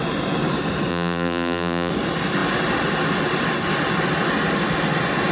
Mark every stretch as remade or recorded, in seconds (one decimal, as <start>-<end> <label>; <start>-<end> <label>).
0.0-0.9 recorded; 0.9-1.9 remade; 1.9-5.3 recorded